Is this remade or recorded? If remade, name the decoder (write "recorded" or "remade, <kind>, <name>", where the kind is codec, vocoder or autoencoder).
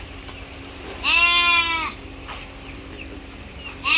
recorded